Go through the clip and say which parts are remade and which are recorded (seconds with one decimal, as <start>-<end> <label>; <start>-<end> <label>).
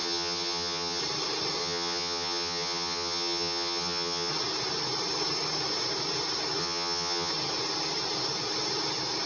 0.0-1.0 remade; 1.0-1.6 recorded; 1.6-4.3 remade; 4.3-6.6 recorded; 6.6-7.3 remade; 7.3-9.3 recorded